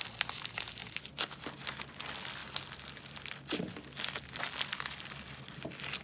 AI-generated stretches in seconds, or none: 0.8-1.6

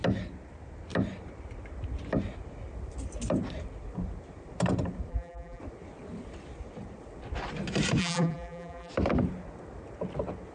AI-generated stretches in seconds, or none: 5.1-5.6; 8.0-8.9

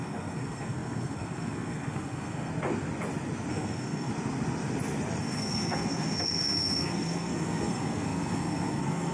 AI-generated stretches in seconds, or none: 0.0-2.5; 3.5-4.1; 5.2-9.1

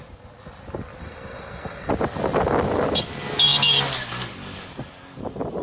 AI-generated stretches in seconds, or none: 1.0-1.9

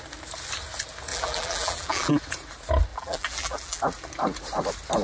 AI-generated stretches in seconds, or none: 1.1-2.1; 2.9-3.8